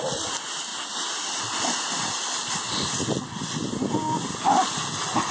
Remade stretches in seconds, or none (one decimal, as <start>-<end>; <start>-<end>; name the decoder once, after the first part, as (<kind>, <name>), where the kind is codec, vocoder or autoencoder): none